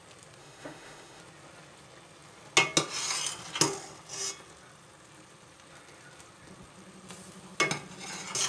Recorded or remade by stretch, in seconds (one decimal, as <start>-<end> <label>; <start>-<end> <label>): 0.0-0.4 recorded; 0.4-1.2 remade; 1.2-8.5 recorded